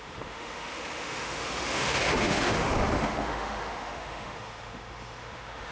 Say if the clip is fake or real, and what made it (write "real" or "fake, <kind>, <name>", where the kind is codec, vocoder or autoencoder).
fake, autoencoder, DAC-VAE